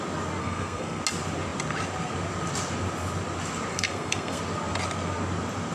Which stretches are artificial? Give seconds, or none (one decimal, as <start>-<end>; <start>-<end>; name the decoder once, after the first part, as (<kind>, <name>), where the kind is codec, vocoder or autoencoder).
0.4-1.0 (codec, SNAC); 3.7-4.4